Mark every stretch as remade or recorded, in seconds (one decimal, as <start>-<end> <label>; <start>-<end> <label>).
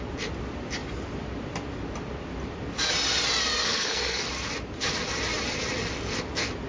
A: 0.0-3.6 recorded; 3.6-4.3 remade; 4.3-6.7 recorded